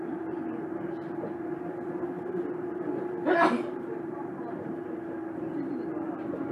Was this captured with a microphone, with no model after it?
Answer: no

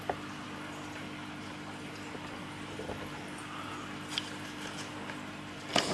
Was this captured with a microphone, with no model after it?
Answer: yes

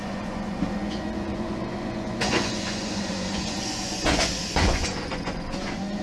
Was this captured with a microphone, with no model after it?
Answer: no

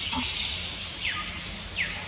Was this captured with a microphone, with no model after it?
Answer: yes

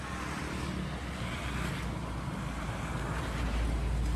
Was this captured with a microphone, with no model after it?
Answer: yes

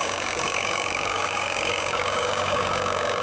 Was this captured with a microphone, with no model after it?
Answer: no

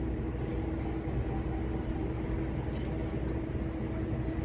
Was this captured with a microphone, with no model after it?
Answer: yes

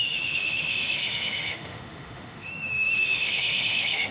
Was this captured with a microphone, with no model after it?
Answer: no